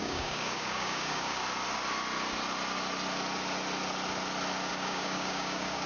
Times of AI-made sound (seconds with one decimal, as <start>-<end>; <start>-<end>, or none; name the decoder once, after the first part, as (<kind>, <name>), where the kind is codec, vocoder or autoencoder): 0.0-1.4 (codec, DAC); 4.7-5.9